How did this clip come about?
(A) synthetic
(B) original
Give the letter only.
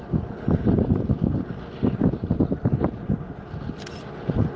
B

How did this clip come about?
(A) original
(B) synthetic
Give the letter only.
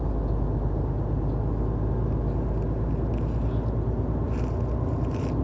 A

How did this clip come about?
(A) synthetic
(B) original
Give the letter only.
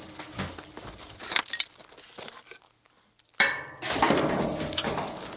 B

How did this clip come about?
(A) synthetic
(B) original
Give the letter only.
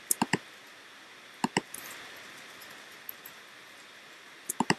B